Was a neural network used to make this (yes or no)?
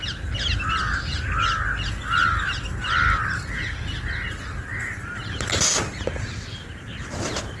no